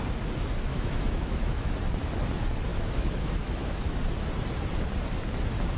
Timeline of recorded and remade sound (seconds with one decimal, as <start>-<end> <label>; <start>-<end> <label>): 0.0-0.7 recorded; 0.7-1.7 remade; 1.7-2.7 recorded; 2.7-4.0 remade; 4.0-5.8 recorded